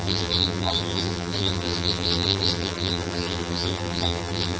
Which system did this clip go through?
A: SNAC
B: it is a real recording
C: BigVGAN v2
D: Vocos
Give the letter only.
C